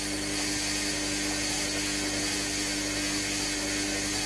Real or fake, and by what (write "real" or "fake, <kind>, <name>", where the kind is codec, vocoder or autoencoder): real